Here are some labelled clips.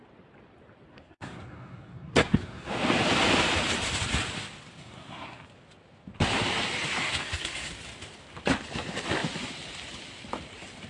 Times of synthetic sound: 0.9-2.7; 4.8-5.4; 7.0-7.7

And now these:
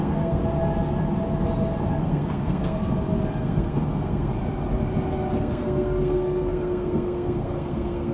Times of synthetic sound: 0.0-0.4; 2.0-2.8; 3.4-4.3; 5.4-8.1

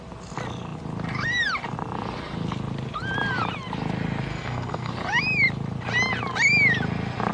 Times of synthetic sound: 4.3-4.9

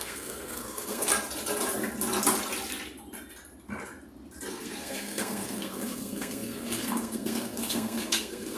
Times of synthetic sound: 0.0-1.1; 4.5-8.6

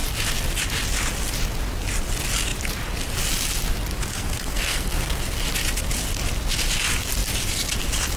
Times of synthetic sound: 4.1-5.2

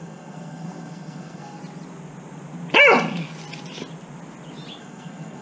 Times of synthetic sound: 0.0-1.6; 4.8-5.4